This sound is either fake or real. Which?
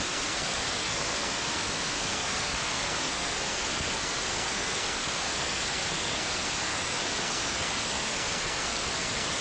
fake